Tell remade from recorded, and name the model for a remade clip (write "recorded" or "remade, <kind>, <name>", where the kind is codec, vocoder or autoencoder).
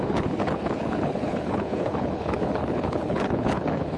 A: remade, codec, HILCodec